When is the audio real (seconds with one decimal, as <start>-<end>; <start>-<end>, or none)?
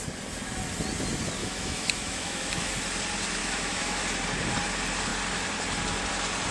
0.0-1.4; 2.7-3.4; 4.0-6.5